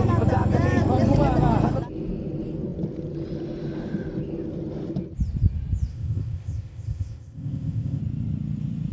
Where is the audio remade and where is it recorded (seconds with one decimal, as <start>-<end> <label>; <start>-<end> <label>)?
0.0-5.9 recorded; 5.9-8.0 remade; 8.0-8.9 recorded